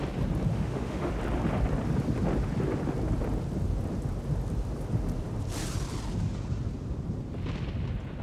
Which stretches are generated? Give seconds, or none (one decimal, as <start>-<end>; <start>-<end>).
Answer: 0.5-1.1